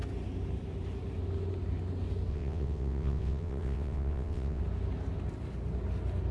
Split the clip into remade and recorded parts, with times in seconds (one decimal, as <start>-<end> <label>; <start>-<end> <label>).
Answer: 0.0-2.3 recorded; 2.3-4.6 remade; 4.6-6.3 recorded